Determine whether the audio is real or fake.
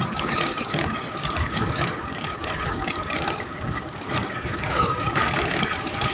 fake